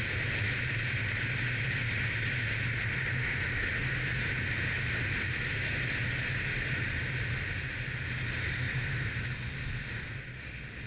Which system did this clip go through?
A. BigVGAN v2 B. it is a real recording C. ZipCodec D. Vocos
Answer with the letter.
B